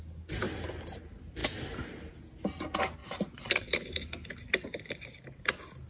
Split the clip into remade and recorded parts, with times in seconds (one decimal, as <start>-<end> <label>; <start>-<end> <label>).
0.0-3.0 recorded; 3.0-3.9 remade; 3.9-5.9 recorded